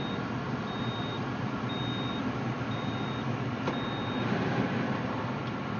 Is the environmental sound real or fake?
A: real